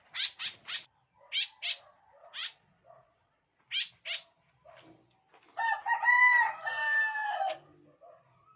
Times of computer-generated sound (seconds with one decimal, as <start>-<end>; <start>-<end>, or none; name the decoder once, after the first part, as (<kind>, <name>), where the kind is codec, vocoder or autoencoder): 2.4-3.6 (vocoder, Vocos)